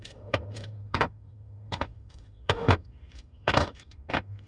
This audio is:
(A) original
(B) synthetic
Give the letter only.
B